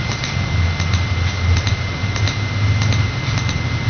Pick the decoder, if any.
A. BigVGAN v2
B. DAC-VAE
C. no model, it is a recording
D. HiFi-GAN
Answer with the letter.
C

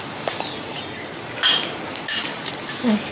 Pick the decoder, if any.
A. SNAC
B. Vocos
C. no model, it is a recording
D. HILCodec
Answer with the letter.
C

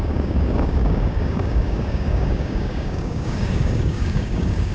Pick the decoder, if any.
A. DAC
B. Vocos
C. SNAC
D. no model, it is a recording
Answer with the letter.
A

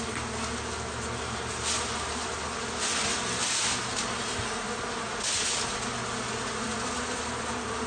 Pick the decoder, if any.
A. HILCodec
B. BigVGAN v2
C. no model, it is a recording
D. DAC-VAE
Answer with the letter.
C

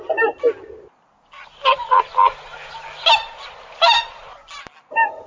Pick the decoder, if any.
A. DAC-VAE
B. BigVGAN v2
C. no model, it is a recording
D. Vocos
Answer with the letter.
C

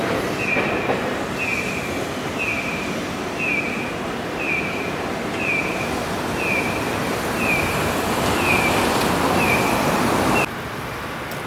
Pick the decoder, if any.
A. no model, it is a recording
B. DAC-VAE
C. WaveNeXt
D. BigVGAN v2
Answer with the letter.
D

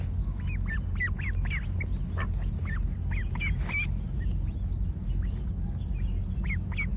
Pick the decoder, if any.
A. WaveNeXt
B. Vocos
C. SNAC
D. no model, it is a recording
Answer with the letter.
D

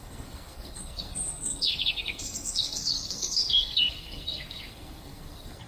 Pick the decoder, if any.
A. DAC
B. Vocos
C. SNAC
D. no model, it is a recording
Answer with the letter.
C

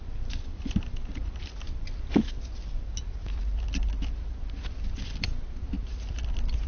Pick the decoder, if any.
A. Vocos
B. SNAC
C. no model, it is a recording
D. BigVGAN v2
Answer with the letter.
C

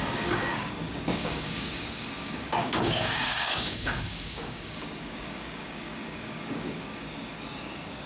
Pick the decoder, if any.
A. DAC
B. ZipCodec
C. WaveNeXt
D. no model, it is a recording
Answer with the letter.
A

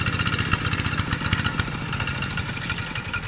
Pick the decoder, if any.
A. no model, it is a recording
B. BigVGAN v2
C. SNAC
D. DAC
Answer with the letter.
A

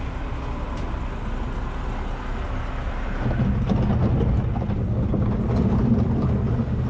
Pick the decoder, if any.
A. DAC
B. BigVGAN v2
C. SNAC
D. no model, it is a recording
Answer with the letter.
D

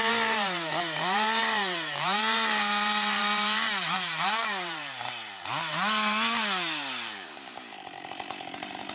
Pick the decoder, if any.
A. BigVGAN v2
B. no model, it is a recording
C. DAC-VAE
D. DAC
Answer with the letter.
A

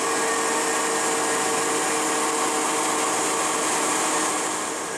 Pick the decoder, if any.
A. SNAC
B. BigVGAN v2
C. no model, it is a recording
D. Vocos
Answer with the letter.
C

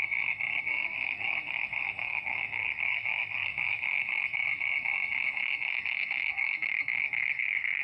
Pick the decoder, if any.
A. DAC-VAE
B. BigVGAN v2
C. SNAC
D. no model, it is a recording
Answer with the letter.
C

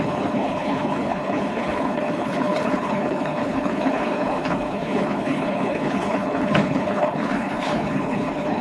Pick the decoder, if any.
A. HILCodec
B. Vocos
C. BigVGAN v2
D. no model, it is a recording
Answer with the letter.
A